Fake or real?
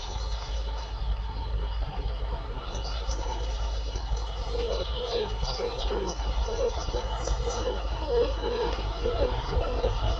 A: fake